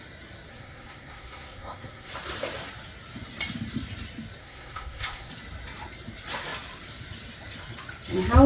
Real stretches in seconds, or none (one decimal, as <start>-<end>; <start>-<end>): 0.0-0.5; 2.1-4.4; 5.3-8.5